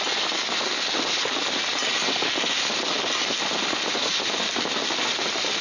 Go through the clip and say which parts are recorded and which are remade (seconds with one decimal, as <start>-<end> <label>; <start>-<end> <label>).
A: 0.0-5.6 recorded